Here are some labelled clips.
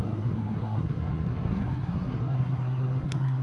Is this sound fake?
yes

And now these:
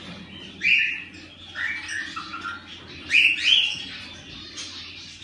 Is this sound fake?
no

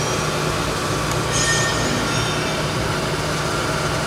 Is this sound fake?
no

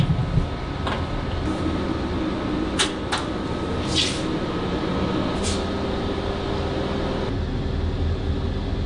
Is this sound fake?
no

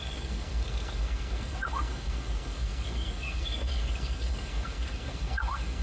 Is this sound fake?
yes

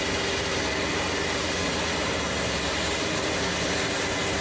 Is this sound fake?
no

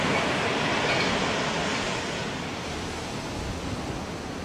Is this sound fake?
no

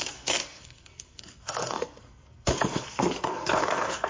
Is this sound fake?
yes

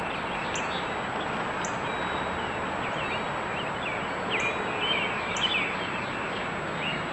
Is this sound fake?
no